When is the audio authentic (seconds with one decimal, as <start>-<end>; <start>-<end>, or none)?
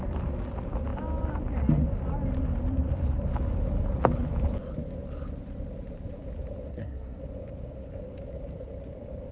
0.0-6.7; 7.2-9.3